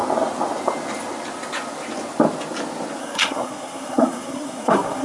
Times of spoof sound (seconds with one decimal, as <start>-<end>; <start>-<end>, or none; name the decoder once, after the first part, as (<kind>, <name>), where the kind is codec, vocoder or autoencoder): 3.0-5.0 (codec, SNAC)